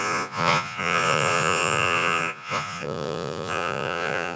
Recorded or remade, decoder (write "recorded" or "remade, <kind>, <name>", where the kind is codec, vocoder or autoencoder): remade, vocoder, Vocos